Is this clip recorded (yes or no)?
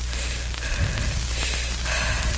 yes